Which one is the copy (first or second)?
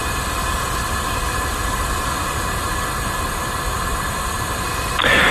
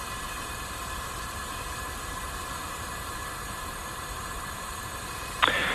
second